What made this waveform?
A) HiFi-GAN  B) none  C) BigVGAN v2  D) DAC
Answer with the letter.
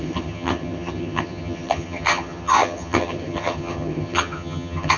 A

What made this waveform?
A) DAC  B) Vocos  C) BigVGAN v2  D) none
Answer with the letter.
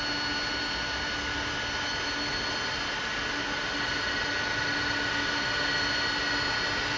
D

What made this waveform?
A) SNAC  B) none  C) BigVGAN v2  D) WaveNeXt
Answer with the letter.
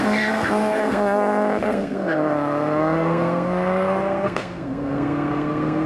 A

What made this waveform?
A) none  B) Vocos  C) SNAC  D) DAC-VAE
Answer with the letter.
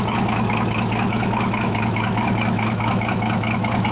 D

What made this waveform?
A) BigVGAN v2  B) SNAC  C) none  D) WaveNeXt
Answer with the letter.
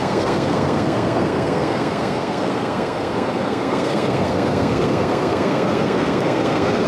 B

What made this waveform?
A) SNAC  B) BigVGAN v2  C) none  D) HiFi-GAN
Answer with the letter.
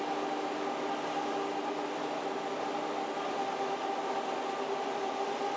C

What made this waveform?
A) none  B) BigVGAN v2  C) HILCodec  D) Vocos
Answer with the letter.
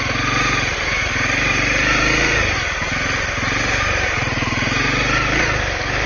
A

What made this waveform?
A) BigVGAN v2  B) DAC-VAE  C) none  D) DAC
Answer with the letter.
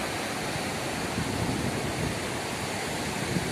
C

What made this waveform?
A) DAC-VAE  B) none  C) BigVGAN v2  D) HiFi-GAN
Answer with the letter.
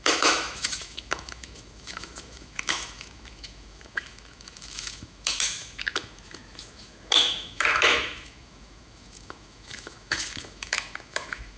A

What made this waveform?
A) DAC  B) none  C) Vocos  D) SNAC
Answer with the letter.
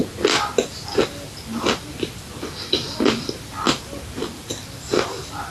B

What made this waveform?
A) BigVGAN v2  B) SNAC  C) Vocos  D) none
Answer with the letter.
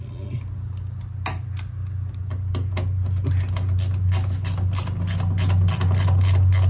D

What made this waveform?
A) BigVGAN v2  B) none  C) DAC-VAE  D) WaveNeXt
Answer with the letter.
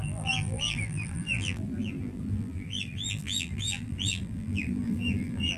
A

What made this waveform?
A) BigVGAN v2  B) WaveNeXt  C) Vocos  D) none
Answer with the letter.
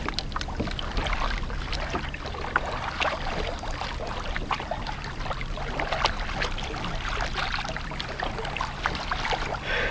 D